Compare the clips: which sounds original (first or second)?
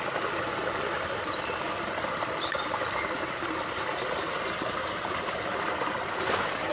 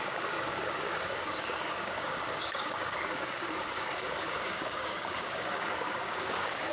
first